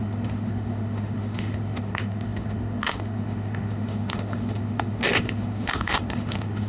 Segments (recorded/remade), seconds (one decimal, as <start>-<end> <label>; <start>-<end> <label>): 0.0-6.7 remade